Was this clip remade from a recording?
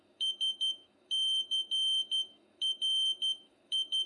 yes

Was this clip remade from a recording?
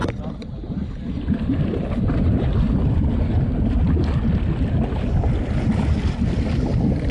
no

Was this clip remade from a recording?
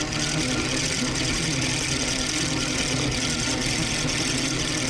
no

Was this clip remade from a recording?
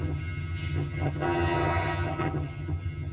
yes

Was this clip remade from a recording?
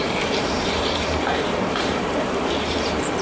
yes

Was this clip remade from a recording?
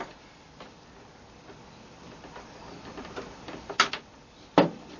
no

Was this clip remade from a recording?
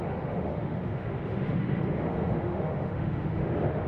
yes